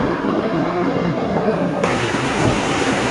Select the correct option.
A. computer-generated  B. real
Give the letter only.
A